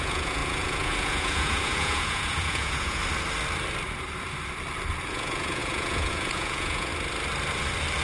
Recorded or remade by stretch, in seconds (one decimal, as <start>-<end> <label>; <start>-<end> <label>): 0.0-3.0 remade; 3.0-5.1 recorded; 5.1-6.9 remade; 6.9-8.0 recorded

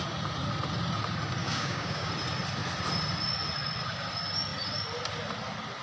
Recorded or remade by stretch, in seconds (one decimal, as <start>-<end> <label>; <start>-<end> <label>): 0.0-1.4 recorded; 1.4-2.1 remade; 2.1-5.8 recorded

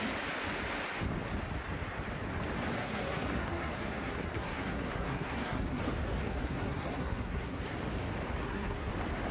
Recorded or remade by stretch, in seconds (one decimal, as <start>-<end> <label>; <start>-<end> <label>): 0.0-2.8 recorded; 2.8-5.8 remade; 5.8-6.2 recorded; 6.2-7.6 remade; 7.6-8.4 recorded; 8.4-8.9 remade; 8.9-9.3 recorded